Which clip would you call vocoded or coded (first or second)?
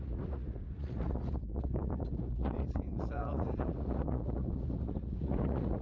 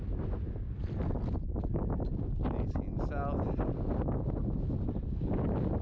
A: first